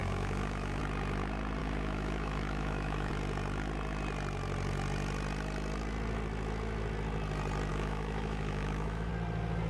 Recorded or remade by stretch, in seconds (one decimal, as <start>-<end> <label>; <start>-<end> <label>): 0.0-0.8 remade; 0.8-1.6 recorded; 1.6-3.1 remade; 3.1-7.7 recorded; 7.7-9.1 remade; 9.1-9.7 recorded